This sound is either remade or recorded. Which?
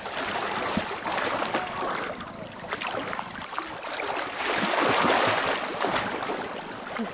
recorded